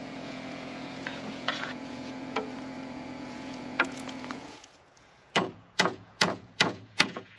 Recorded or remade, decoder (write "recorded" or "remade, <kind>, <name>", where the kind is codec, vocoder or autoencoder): remade, vocoder, Vocos